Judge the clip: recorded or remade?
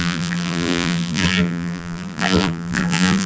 remade